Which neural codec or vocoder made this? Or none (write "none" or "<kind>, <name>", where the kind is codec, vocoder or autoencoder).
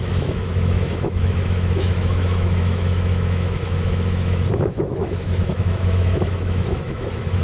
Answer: autoencoder, DAC-VAE